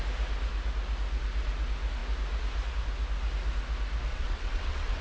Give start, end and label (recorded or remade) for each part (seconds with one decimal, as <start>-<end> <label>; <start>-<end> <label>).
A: 0.0-4.1 recorded; 4.1-5.0 remade